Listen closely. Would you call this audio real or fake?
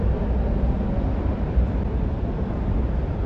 real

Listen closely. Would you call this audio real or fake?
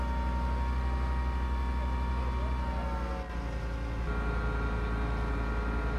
real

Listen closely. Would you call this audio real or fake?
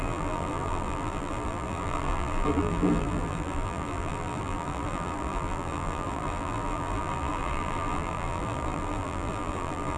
fake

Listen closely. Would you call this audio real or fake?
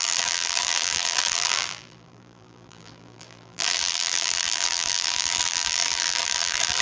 fake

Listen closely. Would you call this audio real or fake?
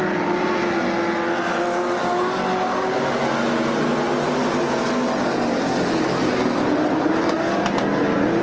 real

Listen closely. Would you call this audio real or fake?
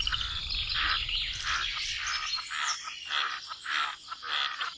fake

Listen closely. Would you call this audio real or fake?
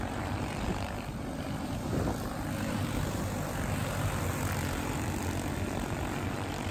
fake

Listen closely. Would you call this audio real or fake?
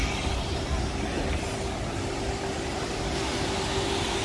real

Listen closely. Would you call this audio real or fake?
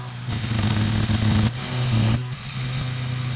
real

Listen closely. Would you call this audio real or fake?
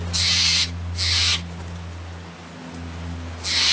real